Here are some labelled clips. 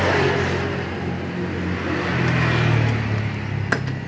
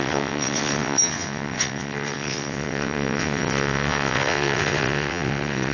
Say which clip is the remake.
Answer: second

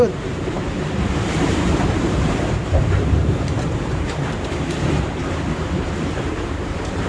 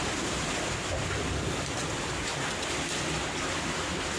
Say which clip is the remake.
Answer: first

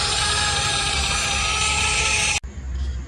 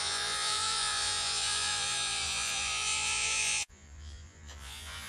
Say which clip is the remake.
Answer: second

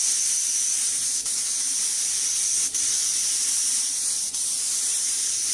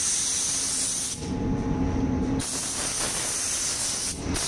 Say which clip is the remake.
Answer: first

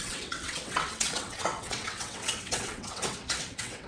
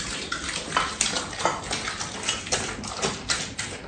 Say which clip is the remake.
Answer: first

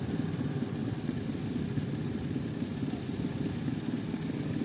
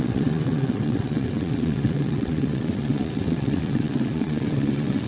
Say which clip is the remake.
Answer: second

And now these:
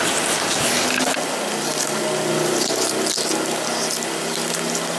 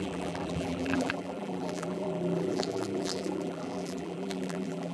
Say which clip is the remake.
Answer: second